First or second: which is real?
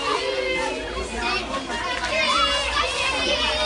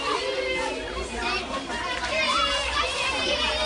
first